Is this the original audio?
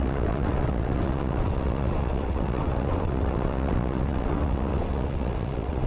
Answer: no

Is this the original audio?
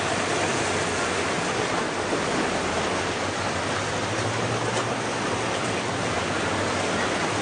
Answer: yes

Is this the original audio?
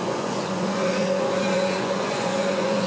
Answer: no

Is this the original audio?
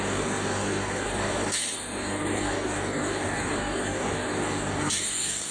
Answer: no